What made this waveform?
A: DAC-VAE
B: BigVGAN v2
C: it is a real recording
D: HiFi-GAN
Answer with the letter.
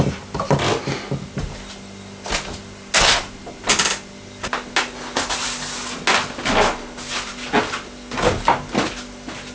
C